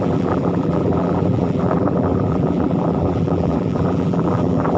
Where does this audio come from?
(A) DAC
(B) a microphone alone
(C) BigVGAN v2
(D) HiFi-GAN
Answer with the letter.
C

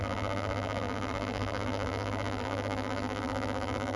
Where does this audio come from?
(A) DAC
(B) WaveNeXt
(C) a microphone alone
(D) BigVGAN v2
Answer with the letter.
D